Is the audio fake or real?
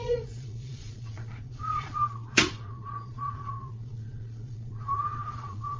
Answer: fake